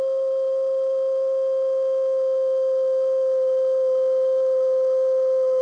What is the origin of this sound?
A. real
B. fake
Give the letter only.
A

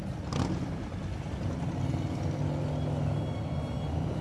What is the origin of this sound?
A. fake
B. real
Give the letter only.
B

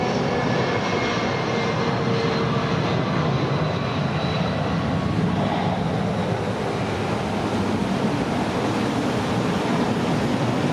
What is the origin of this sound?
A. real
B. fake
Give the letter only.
A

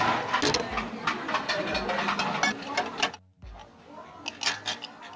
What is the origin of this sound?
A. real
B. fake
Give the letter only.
A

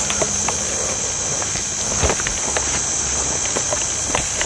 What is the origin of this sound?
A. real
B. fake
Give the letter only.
A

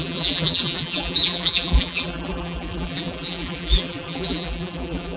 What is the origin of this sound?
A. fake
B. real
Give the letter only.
A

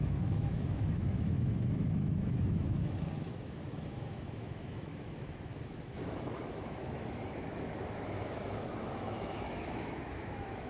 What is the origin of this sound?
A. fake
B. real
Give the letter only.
A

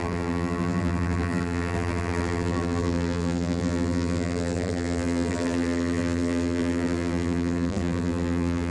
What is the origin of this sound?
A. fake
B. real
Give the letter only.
A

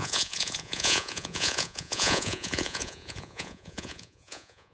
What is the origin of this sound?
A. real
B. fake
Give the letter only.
B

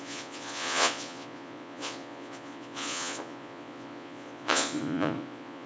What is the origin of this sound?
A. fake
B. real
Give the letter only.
A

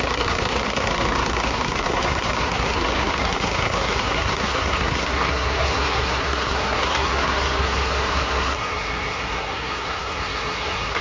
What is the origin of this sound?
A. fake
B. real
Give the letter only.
A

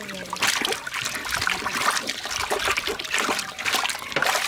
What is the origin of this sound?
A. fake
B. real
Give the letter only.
B